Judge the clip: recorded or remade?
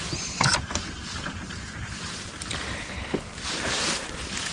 recorded